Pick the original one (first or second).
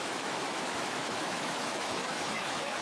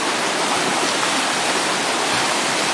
second